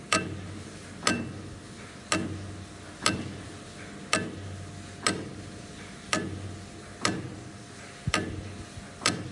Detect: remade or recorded recorded